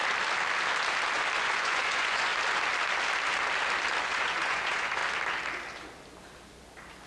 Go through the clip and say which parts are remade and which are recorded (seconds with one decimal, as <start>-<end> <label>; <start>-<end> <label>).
0.0-1.4 recorded; 1.4-2.3 remade; 2.3-4.0 recorded; 4.0-5.0 remade; 5.0-7.1 recorded